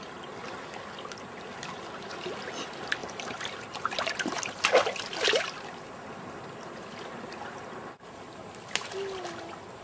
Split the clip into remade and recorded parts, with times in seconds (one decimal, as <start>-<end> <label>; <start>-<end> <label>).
0.0-3.0 recorded; 3.0-4.7 remade; 4.7-9.8 recorded